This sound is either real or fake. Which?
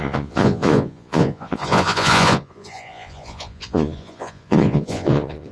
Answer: fake